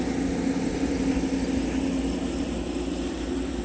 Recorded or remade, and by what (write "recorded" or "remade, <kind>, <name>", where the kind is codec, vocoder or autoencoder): recorded